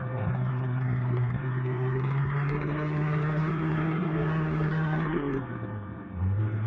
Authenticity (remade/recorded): remade